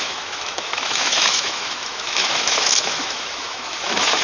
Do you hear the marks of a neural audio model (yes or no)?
yes